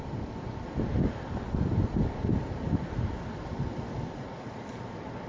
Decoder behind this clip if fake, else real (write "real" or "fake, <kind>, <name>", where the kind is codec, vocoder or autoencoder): real